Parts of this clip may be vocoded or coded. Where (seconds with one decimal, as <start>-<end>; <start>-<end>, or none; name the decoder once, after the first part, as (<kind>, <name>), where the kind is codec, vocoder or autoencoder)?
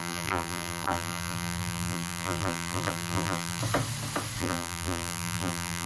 0.0-3.6 (vocoder, BigVGAN v2); 4.4-5.9